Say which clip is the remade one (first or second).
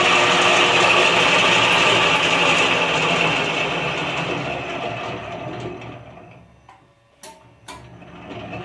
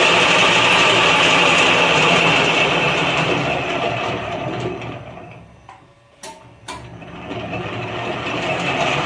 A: second